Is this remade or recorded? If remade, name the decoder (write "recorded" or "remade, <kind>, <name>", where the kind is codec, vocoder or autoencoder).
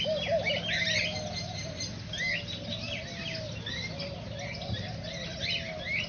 recorded